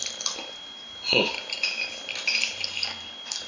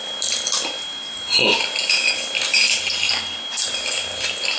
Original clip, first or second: second